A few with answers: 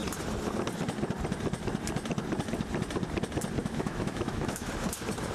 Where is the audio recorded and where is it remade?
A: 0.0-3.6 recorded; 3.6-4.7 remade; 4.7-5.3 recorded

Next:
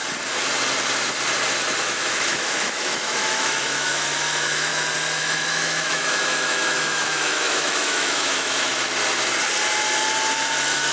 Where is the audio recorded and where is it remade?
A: 0.0-1.8 recorded; 1.8-4.7 remade; 4.7-5.2 recorded; 5.2-8.7 remade; 8.7-10.3 recorded; 10.3-10.9 remade

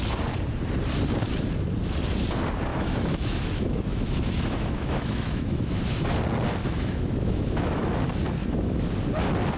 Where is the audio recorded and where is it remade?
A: 0.0-2.7 recorded; 2.7-5.8 remade; 5.8-6.6 recorded; 6.6-8.0 remade; 8.0-8.4 recorded; 8.4-8.9 remade; 8.9-9.6 recorded

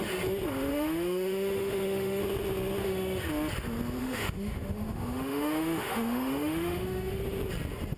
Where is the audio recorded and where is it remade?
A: 0.0-0.7 recorded; 0.7-2.2 remade; 2.2-2.8 recorded; 2.8-3.3 remade; 3.3-4.0 recorded; 4.0-7.2 remade; 7.2-8.0 recorded

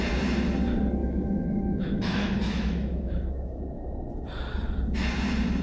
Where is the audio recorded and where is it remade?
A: 0.0-1.0 recorded; 1.0-3.6 remade; 3.6-5.6 recorded

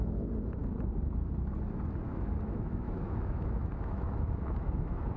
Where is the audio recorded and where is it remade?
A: 0.0-2.1 recorded; 2.1-5.2 remade